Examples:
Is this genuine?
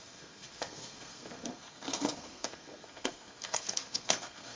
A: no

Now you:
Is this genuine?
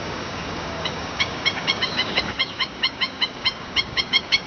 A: no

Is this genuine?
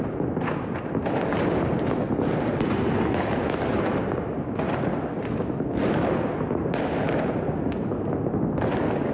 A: yes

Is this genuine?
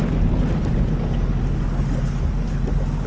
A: yes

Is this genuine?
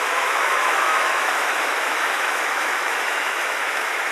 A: no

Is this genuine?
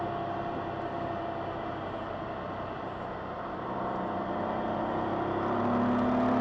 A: yes